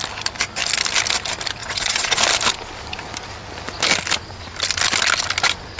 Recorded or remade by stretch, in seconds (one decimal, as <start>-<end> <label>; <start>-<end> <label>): 0.0-1.6 recorded; 1.6-2.2 remade; 2.2-5.8 recorded